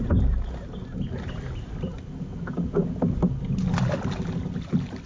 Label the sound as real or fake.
real